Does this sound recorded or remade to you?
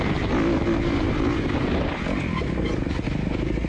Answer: recorded